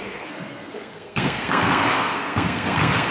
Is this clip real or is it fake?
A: fake